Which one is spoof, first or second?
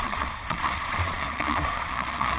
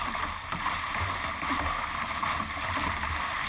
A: first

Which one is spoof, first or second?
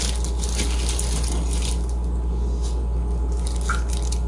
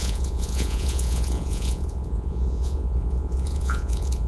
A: second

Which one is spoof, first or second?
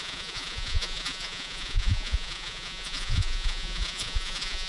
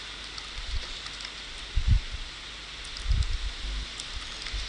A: first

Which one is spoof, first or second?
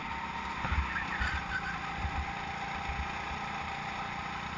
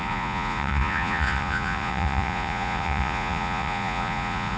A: second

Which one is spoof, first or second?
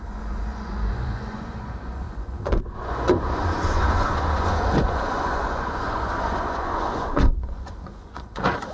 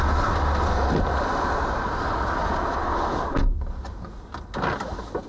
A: first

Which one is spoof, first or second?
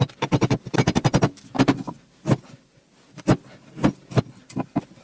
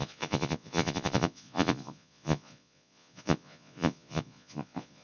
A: second